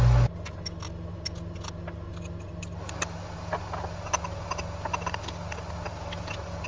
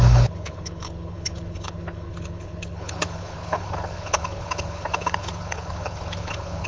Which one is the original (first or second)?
first